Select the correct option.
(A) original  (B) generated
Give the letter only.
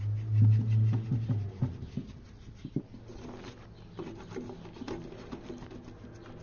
A